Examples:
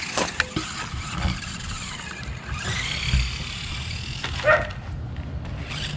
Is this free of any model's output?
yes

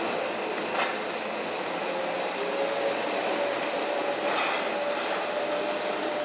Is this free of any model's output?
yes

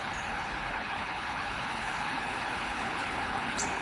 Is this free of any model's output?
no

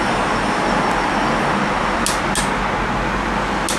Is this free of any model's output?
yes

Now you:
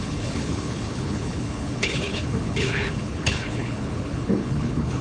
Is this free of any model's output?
no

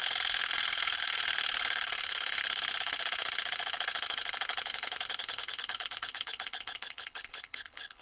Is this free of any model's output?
no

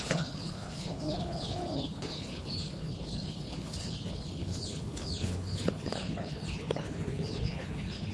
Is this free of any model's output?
no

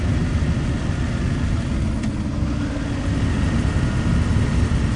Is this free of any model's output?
yes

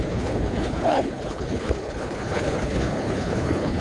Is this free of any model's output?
no